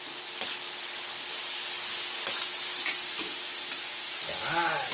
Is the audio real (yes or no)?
yes